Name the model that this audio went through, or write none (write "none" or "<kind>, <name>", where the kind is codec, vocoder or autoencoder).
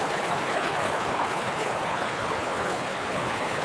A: codec, HILCodec